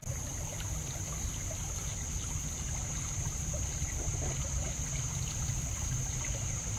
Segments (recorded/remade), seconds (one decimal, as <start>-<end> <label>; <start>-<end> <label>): 0.0-6.8 recorded

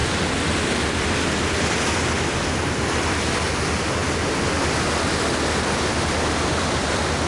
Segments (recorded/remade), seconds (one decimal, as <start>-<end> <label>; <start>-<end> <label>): 0.0-7.3 recorded

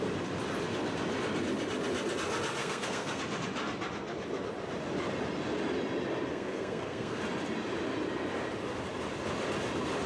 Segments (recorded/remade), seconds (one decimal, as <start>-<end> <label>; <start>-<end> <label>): 0.0-2.6 recorded; 2.6-3.2 remade; 3.2-6.3 recorded; 6.3-7.2 remade; 7.2-10.1 recorded